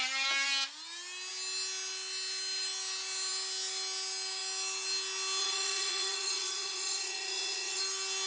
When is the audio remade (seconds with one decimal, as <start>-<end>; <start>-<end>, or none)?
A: 5.4-7.8